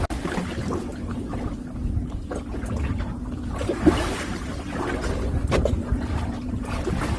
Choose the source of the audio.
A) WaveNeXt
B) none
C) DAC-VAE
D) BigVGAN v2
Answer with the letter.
B